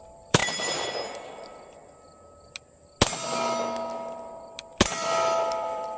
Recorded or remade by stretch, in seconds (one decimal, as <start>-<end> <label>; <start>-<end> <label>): 0.0-1.8 remade; 1.8-5.4 recorded; 5.4-6.0 remade